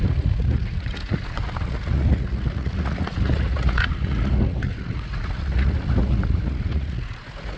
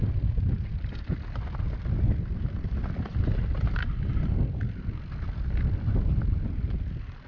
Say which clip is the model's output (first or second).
first